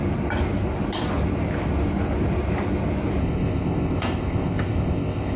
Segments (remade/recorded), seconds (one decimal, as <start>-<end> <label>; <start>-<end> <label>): 0.0-3.2 recorded; 3.2-5.4 remade

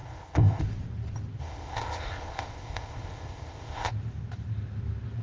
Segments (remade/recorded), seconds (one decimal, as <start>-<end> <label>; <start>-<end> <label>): 0.0-0.6 remade; 0.6-1.4 recorded; 1.4-3.9 remade; 3.9-5.2 recorded

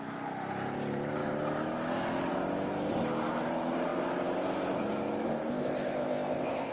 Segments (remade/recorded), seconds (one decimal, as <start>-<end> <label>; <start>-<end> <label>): 0.0-5.5 recorded; 5.5-6.7 remade

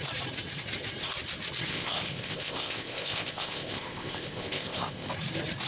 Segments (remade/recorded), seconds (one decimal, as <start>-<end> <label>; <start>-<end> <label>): 0.0-1.7 recorded; 1.7-5.1 remade; 5.1-5.7 recorded

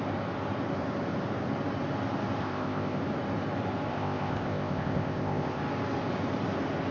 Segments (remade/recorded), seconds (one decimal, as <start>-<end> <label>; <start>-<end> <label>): 0.0-2.4 recorded; 2.4-3.0 remade; 3.0-3.9 recorded; 3.9-5.6 remade; 5.6-6.9 recorded